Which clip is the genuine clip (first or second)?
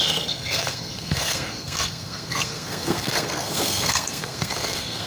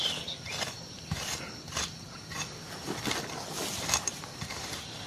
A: second